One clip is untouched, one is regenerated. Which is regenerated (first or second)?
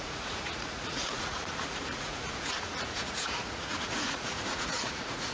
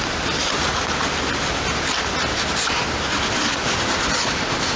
first